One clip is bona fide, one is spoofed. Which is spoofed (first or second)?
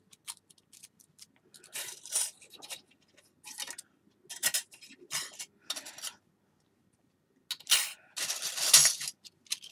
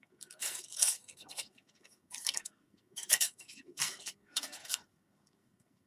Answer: second